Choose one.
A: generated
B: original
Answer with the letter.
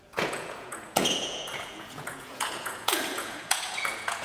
A